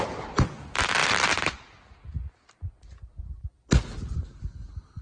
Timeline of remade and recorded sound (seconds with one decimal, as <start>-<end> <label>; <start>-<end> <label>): 0.0-5.0 recorded